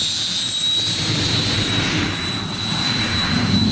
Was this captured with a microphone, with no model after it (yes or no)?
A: yes